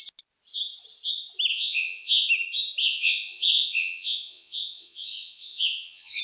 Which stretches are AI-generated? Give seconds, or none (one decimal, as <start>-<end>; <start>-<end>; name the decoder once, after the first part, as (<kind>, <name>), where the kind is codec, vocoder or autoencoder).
1.5-2.3 (vocoder, Vocos); 2.8-6.2